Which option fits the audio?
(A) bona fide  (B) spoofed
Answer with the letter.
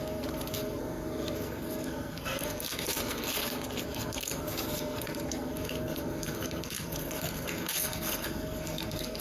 B